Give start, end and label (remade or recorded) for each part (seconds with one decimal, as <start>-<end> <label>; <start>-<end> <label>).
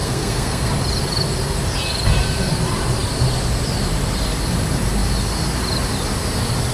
0.0-0.7 remade; 0.7-6.7 recorded